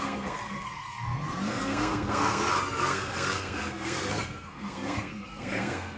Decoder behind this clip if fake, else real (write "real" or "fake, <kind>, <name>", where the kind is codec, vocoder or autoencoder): fake, codec, SNAC